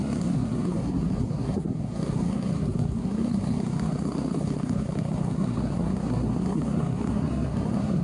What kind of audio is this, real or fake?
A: fake